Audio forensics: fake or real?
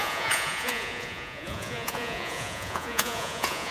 fake